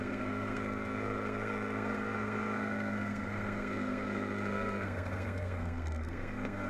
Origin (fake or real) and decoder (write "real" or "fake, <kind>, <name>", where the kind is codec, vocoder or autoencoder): fake, codec, SNAC